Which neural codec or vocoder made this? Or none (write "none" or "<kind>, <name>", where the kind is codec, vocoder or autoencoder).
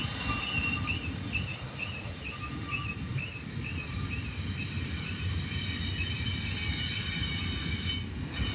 none